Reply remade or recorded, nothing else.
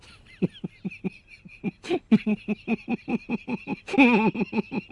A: recorded